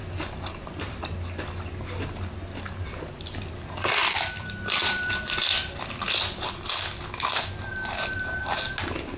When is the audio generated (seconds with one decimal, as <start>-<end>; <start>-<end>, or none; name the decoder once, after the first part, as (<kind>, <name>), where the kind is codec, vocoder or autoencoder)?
0.0-1.0 (vocoder, BigVGAN v2); 4.0-6.6